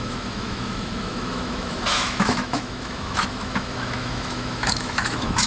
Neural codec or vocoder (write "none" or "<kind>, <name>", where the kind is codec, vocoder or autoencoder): autoencoder, DAC-VAE